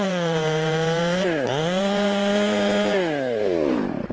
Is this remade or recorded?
remade